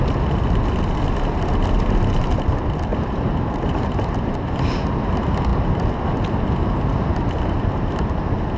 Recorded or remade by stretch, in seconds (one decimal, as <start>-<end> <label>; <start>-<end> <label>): 0.0-2.9 recorded; 2.9-4.1 remade; 4.1-8.6 recorded